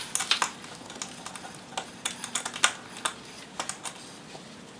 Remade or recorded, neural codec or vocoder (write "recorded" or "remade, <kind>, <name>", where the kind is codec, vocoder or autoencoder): recorded